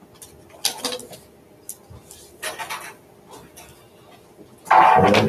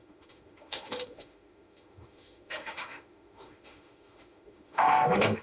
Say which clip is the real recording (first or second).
first